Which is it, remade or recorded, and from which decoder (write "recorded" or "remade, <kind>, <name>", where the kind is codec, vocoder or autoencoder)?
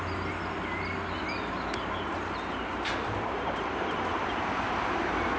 recorded